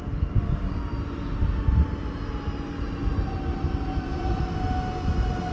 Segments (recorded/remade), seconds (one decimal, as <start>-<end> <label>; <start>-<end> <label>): 0.0-3.9 recorded; 3.9-4.4 remade; 4.4-5.5 recorded